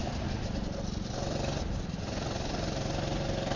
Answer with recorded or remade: recorded